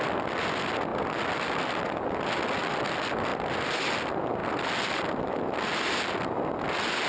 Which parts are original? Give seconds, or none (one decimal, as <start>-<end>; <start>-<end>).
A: 0.0-3.3; 3.8-7.1